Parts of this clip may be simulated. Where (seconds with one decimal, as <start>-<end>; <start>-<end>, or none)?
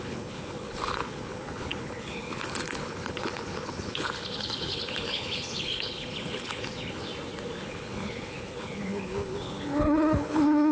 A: 0.0-7.1; 7.6-10.7